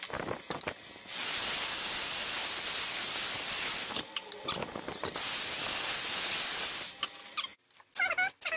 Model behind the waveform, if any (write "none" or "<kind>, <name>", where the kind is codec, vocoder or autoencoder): none